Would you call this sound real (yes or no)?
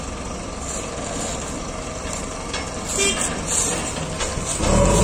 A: yes